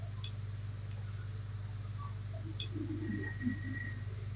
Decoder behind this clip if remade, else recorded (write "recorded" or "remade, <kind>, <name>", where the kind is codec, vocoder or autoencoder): recorded